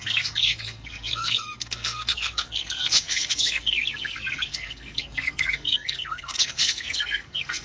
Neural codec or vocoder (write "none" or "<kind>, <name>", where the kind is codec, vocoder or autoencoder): codec, SNAC